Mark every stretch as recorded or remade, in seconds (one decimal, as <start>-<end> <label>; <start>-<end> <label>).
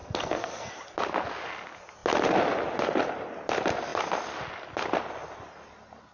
0.0-0.7 remade; 0.7-6.1 recorded